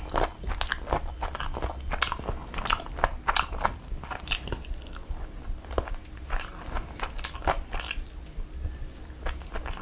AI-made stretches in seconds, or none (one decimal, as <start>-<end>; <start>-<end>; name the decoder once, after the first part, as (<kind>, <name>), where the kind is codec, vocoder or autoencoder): none